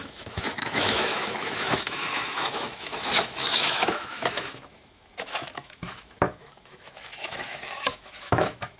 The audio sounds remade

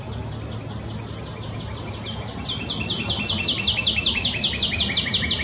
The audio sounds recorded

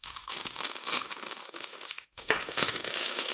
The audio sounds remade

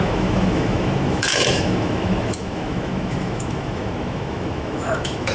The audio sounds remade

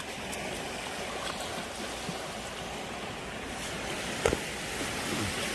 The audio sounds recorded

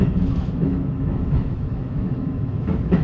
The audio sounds remade